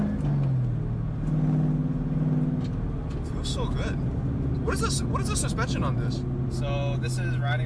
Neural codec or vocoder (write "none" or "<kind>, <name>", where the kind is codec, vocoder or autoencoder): none